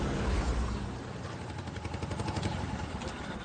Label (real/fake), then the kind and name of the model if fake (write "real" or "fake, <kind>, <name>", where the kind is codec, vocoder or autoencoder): real